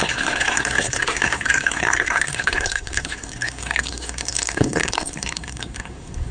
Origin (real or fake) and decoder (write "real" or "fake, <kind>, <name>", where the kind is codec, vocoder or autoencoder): fake, codec, SNAC